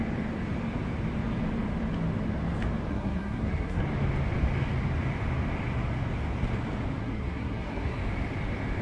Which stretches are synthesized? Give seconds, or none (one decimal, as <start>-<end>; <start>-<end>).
2.9-3.8; 7.0-8.0